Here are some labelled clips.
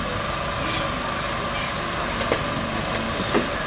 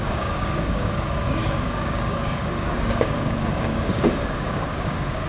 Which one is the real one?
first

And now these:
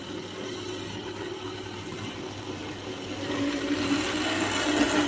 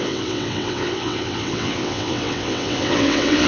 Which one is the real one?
first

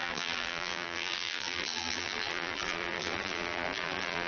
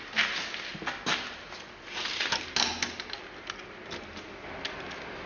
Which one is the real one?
second